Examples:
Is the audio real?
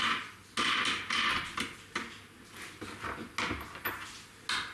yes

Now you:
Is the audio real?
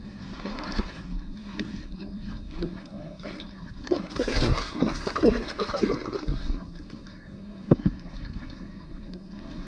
no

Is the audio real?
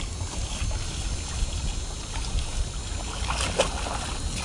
yes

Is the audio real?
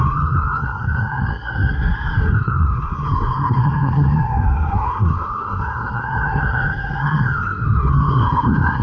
no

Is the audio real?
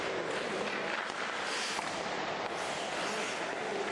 yes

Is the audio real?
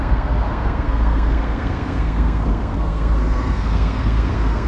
no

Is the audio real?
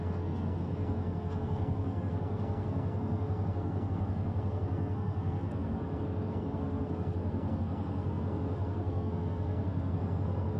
no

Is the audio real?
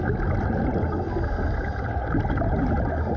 yes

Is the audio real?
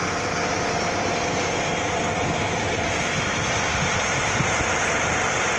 yes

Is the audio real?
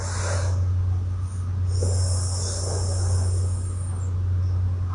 yes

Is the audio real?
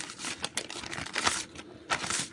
yes